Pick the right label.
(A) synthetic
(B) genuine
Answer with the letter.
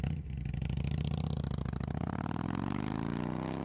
B